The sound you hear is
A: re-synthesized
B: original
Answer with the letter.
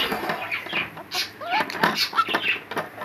B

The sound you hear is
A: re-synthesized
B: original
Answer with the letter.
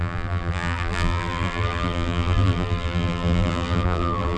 A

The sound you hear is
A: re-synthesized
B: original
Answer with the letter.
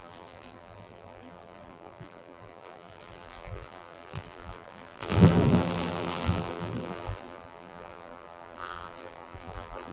A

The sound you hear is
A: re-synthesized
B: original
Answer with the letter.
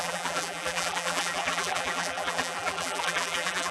A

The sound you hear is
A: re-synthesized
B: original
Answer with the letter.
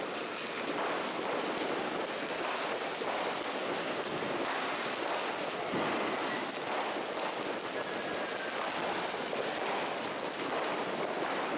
B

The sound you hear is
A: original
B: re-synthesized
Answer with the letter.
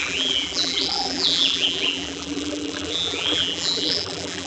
B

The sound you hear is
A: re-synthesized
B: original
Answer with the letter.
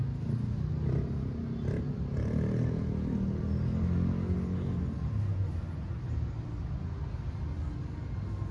B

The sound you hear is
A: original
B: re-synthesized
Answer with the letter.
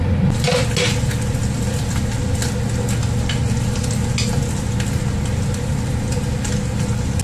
A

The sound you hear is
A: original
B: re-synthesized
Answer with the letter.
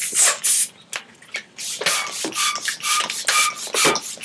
A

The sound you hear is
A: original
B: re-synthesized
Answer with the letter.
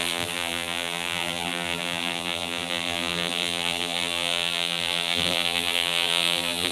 B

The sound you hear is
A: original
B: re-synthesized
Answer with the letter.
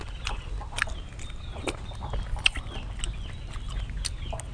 A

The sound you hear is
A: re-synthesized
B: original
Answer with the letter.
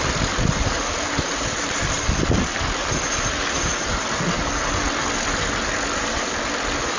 B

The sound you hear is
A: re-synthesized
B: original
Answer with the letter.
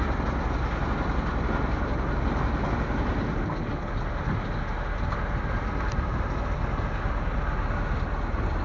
B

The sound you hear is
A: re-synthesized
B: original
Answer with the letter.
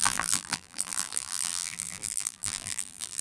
A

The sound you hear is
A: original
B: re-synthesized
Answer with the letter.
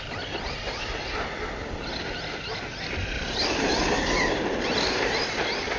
A